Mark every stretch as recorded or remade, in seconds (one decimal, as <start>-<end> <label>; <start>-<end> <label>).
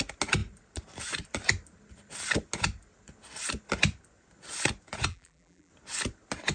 0.0-5.1 recorded; 5.1-5.7 remade; 5.7-6.5 recorded